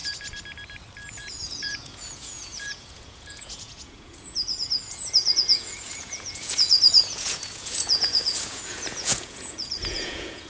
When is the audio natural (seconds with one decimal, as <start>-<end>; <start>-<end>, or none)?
0.0-1.1

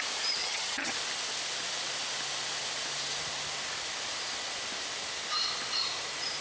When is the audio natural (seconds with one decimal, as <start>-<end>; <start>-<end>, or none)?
0.0-0.4; 0.9-6.4

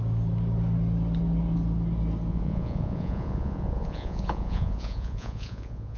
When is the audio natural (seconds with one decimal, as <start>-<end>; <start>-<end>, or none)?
0.0-2.3